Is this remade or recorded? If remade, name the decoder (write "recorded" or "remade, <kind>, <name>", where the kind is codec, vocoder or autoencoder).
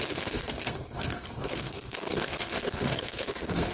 remade, codec, SNAC